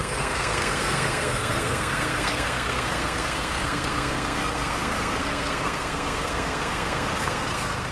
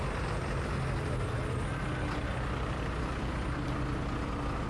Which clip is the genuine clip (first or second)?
second